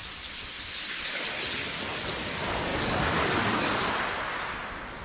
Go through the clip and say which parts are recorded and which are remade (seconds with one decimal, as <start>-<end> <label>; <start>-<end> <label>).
0.0-1.3 remade; 1.3-2.7 recorded; 2.7-3.9 remade; 3.9-5.0 recorded